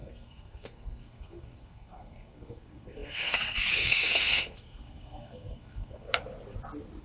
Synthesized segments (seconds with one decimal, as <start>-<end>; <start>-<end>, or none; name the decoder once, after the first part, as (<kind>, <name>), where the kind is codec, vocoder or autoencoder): 0.0-6.1 (codec, SNAC)